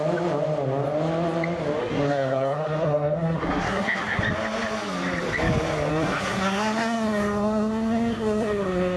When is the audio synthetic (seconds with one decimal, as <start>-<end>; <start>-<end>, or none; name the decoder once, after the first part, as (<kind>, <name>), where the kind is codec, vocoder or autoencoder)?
1.8-4.2 (codec, SNAC); 5.9-9.0